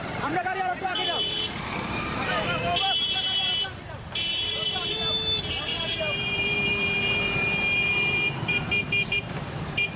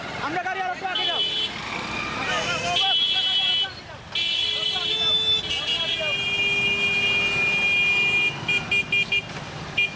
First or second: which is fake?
first